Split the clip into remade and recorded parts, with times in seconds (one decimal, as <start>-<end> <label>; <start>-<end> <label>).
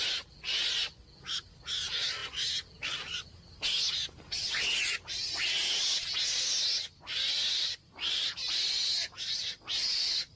0.0-10.4 recorded